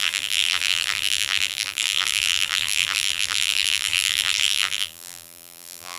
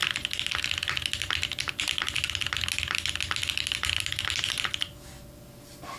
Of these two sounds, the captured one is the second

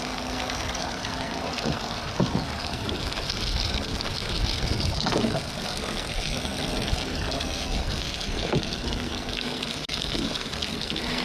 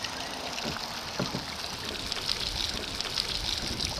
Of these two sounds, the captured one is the second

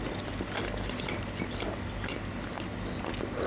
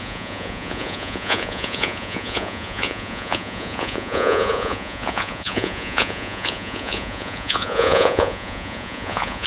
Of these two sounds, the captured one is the first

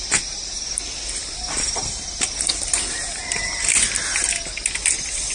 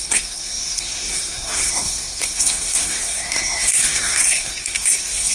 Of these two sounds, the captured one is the first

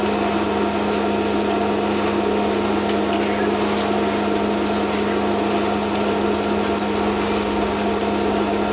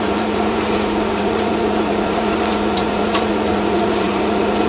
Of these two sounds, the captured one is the first